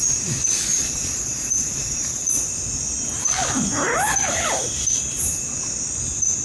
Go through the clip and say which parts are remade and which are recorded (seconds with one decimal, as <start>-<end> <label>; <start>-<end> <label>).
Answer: 0.0-0.7 recorded; 0.7-2.3 remade; 2.3-6.4 recorded